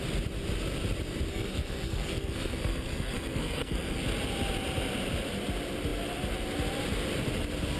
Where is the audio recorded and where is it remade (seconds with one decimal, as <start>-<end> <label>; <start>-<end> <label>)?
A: 0.0-1.3 recorded; 1.3-4.0 remade; 4.0-7.8 recorded

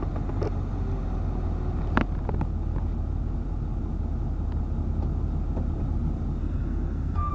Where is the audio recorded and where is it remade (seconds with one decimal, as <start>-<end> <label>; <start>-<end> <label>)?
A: 0.0-6.4 recorded; 6.4-7.3 remade

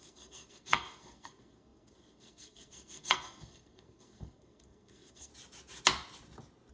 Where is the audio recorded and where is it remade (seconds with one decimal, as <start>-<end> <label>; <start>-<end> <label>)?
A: 0.0-5.3 remade; 5.3-6.7 recorded